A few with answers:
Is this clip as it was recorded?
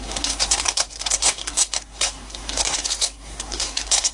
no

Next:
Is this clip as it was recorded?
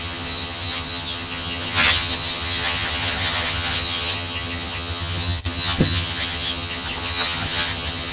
no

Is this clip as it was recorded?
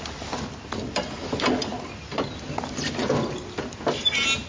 yes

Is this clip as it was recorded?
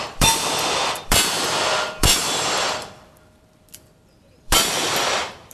no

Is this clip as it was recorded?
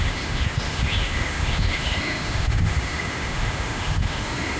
no